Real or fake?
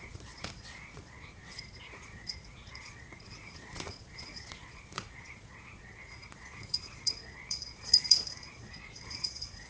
fake